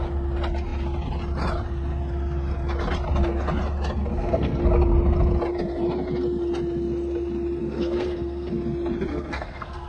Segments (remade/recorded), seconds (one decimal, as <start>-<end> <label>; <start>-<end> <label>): 0.0-4.1 recorded; 4.1-4.6 remade; 4.6-7.6 recorded; 7.6-8.5 remade; 8.5-9.1 recorded; 9.1-9.9 remade